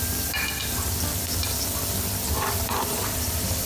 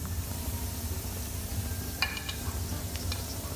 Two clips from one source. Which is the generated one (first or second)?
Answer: second